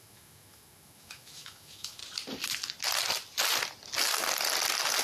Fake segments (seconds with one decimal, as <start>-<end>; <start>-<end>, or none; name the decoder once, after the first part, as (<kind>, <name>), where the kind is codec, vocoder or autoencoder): 0.0-2.0 (autoencoder, DAC-VAE)